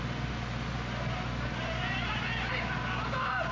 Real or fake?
real